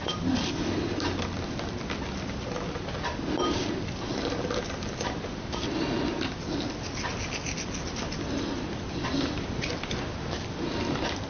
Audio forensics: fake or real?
real